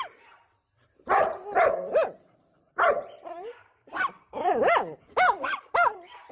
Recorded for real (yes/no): no